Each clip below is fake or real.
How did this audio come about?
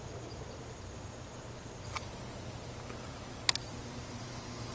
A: real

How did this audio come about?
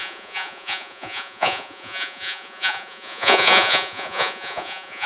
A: fake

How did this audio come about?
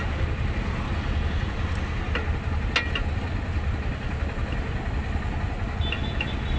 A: real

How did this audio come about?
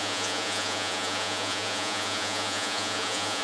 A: fake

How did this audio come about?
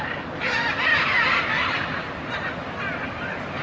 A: real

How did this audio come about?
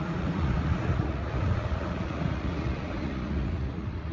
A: fake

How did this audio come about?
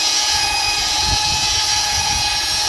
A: fake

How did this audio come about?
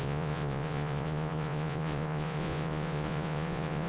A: fake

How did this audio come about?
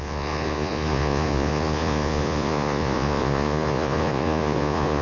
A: fake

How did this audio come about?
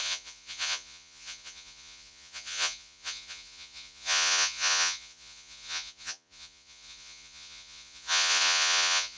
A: fake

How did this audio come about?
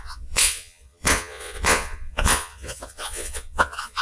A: fake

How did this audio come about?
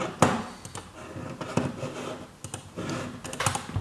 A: real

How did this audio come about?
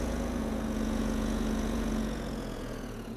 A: fake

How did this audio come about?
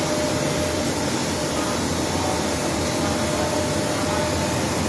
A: real